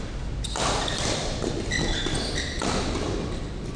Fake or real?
real